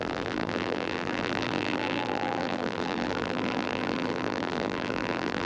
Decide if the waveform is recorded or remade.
remade